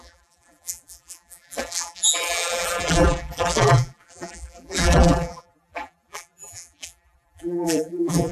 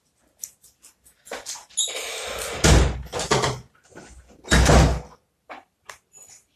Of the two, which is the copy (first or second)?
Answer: first